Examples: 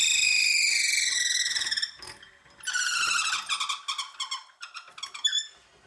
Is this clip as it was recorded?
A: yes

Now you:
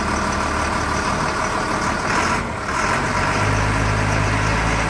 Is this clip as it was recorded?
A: yes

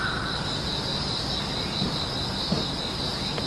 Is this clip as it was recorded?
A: yes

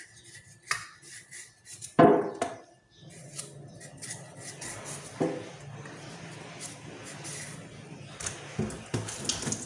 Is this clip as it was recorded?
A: yes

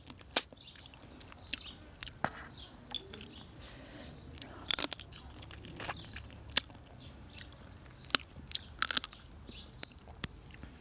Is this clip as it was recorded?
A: yes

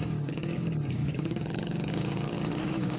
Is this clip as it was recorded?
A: no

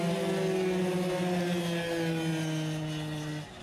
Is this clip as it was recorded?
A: yes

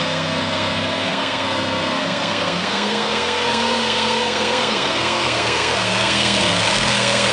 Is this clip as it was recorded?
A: no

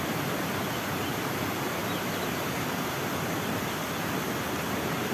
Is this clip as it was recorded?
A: yes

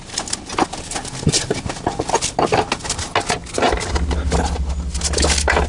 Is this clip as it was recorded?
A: yes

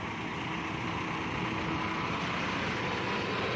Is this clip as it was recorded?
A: yes